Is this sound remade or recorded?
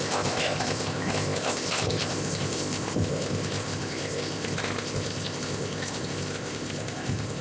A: remade